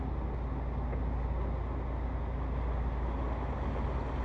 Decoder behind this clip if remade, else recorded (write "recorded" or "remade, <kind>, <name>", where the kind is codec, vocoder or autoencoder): recorded